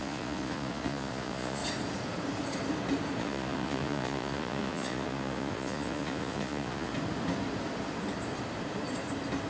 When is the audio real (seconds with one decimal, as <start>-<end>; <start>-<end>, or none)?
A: 1.6-3.2; 6.9-9.5